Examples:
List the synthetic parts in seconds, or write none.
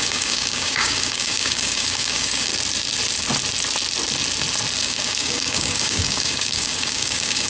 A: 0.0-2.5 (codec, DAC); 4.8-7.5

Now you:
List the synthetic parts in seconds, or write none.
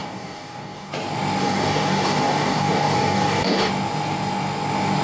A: 0.0-0.9 (codec, DAC); 1.4-3.7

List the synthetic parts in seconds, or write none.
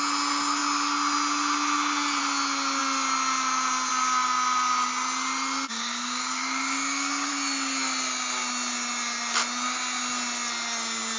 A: 5.7-7.3 (codec, DAC)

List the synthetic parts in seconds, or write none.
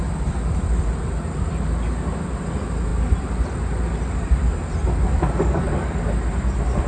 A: 5.1-6.0 (codec, DAC)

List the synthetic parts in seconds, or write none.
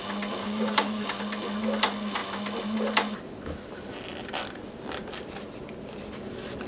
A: 0.4-1.2 (codec, DAC)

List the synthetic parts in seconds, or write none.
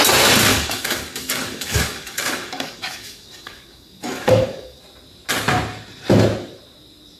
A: 0.5-4.8 (codec, DAC)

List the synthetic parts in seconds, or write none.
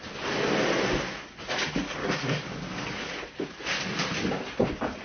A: 2.0-3.1 (codec, DAC)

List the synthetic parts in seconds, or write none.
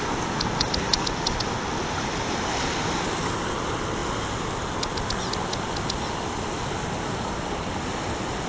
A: none